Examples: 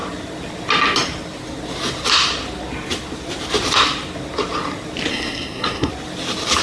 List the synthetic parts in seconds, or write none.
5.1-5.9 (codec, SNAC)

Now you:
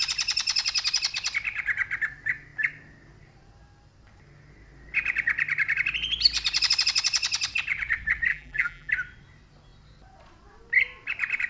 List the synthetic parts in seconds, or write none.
8.3-8.9 (vocoder, BigVGAN v2)

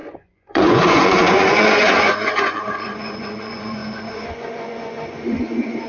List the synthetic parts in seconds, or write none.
0.0-5.9 (vocoder, Vocos)

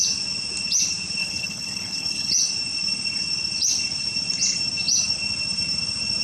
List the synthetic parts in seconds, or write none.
1.2-2.3 (codec, HILCodec)

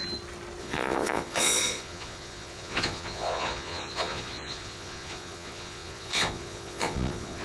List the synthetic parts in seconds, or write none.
0.6-7.4 (vocoder, Vocos)

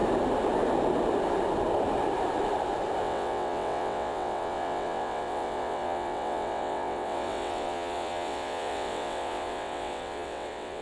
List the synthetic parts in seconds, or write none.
3.0-10.8 (vocoder, WaveNeXt)